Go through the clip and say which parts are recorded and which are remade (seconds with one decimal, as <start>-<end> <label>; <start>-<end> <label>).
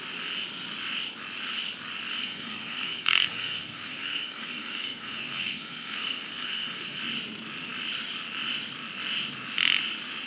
0.0-2.2 recorded; 2.2-7.0 remade; 7.0-10.3 recorded